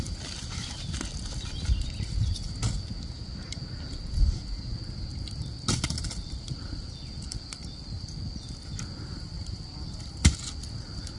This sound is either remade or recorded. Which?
recorded